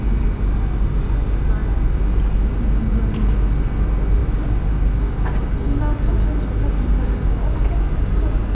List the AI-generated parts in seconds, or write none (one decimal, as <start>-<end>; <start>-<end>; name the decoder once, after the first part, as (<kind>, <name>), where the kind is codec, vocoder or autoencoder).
none